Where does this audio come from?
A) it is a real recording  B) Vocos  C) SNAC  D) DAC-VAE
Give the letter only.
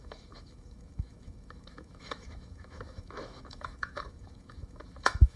D